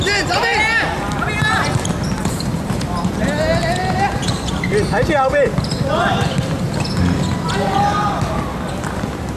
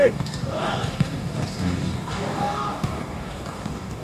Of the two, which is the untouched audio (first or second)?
first